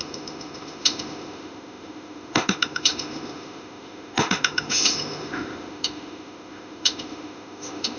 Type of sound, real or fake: fake